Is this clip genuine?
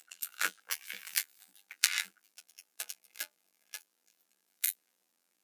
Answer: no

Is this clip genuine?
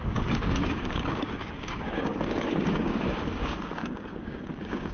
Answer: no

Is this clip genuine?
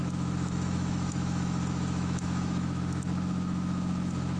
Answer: no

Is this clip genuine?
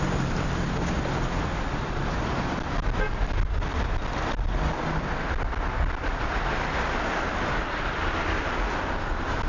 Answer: yes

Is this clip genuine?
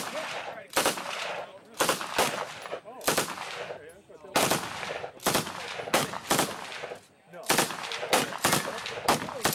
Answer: yes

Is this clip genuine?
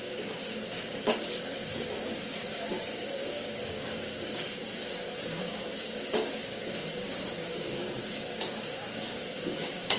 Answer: no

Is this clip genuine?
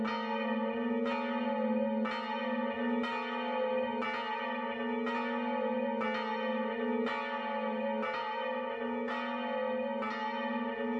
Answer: yes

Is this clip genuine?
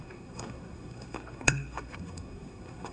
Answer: no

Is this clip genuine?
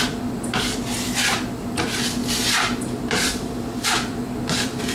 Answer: no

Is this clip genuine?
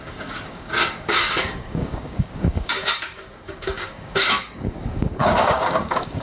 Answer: no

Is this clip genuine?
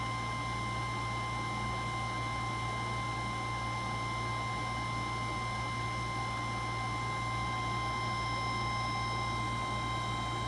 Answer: yes